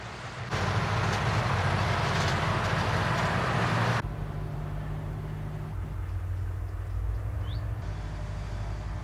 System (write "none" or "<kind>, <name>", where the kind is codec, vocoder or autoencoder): none